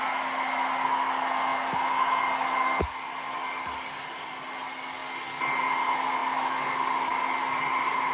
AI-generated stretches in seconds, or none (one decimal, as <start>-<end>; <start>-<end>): none